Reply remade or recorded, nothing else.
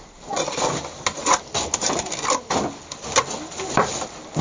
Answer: recorded